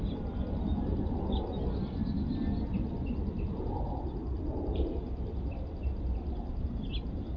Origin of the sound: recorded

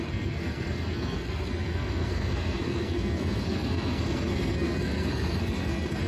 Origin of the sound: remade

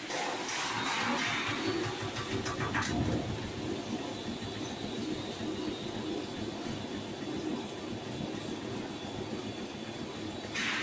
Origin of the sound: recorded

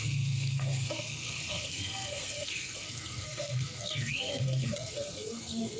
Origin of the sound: remade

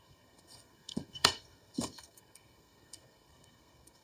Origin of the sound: remade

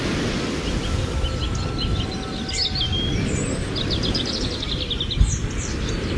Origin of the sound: recorded